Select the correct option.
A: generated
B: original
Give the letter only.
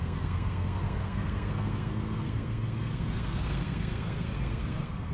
A